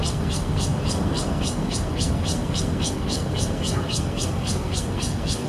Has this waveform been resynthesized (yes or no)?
yes